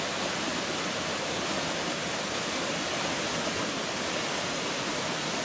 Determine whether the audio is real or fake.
real